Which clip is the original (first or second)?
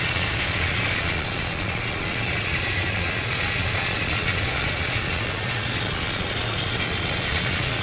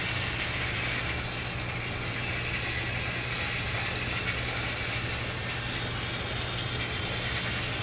second